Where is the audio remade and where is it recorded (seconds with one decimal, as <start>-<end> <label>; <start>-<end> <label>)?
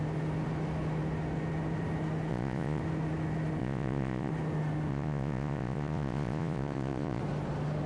0.0-2.3 recorded; 2.3-2.8 remade; 2.8-3.6 recorded; 3.6-4.3 remade; 4.3-4.9 recorded; 4.9-7.2 remade; 7.2-7.9 recorded